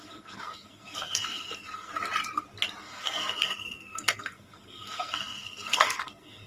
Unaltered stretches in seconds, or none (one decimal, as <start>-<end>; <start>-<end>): 1.9-2.8